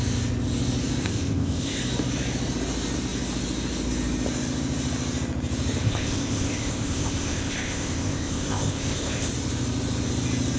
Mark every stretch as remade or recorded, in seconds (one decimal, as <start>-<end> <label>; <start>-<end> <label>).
0.0-1.0 recorded; 1.0-1.8 remade; 1.8-5.8 recorded; 5.8-9.3 remade; 9.3-10.6 recorded